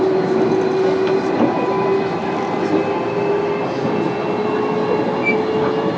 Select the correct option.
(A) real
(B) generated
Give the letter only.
A